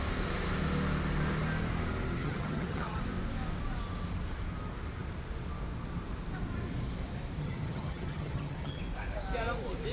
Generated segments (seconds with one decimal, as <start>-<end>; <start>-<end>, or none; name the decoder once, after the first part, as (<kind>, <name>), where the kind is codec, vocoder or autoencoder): 2.2-3.0 (vocoder, HiFi-GAN); 7.4-8.8